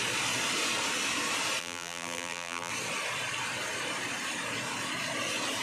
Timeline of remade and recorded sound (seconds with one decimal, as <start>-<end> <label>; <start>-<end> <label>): 0.0-1.6 recorded; 1.6-2.7 remade; 2.7-5.6 recorded